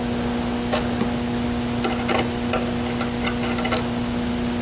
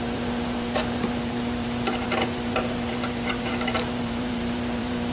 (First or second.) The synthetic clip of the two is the second